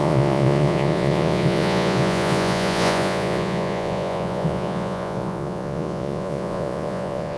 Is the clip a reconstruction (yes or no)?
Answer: yes